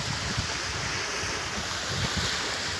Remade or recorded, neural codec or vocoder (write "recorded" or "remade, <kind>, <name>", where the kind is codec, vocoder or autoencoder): recorded